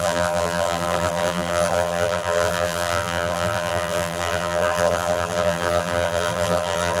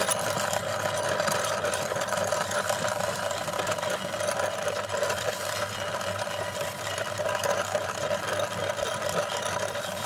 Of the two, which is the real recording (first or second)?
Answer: second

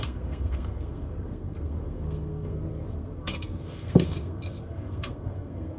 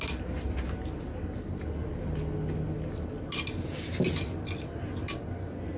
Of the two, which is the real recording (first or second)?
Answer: second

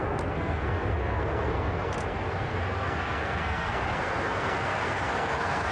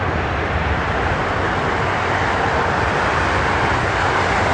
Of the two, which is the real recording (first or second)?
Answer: second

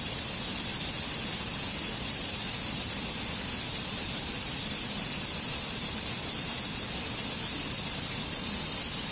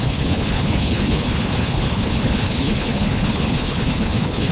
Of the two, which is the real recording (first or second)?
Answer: first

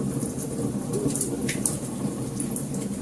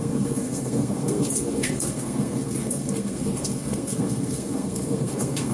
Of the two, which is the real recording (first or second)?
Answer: first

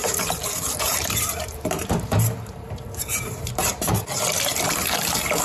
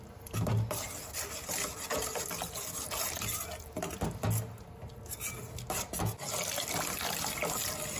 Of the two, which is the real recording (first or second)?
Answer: second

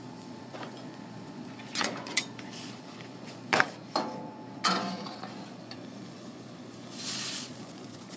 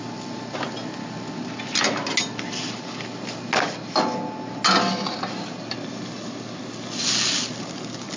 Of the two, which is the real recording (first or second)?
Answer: second